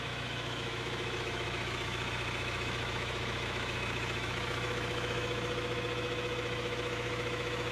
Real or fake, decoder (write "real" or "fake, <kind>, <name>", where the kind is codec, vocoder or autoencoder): fake, autoencoder, DAC-VAE